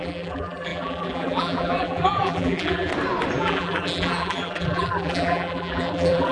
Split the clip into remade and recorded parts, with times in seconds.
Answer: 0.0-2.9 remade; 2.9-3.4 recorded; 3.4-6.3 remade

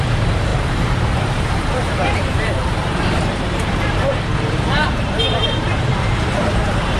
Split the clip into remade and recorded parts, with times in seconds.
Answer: 0.0-7.0 remade

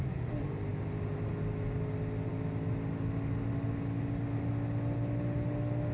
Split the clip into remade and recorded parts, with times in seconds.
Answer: 0.0-0.7 recorded; 0.7-1.3 remade; 1.3-5.9 recorded

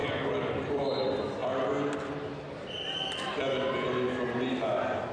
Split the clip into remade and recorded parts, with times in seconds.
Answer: 0.0-0.8 remade; 0.8-5.1 recorded

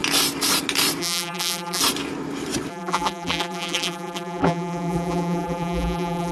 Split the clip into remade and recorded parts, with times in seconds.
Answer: 0.0-1.0 recorded; 1.0-1.8 remade; 1.8-2.7 recorded; 2.7-6.3 remade